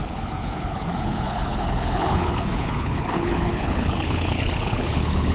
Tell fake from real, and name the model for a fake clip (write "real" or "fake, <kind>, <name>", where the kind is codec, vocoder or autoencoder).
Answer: fake, codec, HILCodec